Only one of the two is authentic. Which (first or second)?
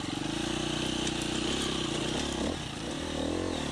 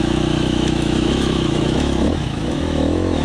first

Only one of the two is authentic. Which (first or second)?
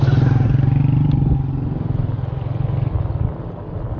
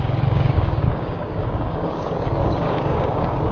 first